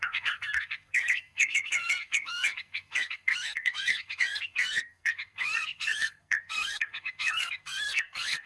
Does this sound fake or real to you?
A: fake